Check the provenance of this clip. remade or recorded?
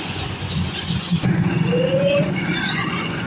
remade